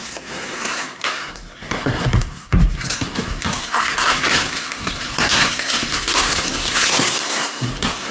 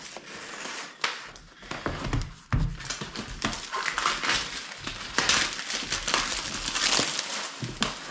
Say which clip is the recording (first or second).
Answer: second